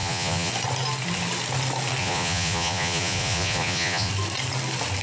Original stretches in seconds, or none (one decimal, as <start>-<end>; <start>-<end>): 0.5-2.0; 4.1-5.0